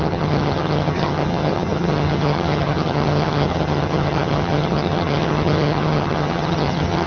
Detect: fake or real fake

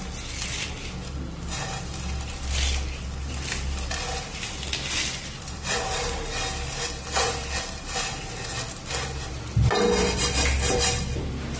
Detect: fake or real real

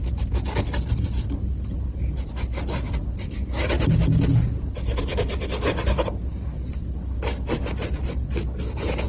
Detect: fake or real real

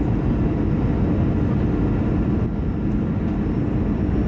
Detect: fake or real real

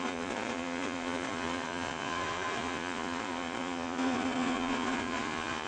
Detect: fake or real fake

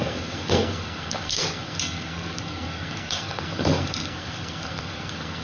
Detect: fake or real fake